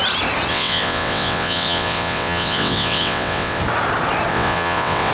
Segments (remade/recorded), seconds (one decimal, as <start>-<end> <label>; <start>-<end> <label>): 0.0-0.5 recorded; 0.5-3.6 remade; 3.6-4.3 recorded; 4.3-5.1 remade